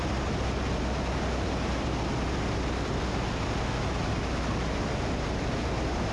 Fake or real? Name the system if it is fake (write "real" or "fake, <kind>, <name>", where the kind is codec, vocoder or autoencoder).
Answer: real